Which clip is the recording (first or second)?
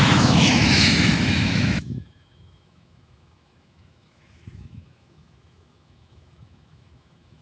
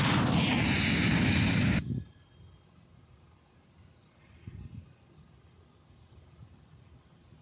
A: second